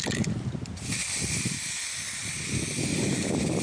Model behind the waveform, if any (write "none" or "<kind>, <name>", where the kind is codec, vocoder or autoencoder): none